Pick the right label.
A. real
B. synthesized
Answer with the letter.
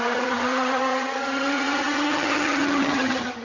B